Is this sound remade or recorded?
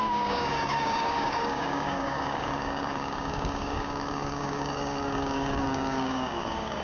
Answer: remade